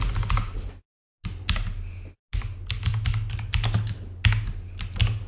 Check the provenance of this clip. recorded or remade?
recorded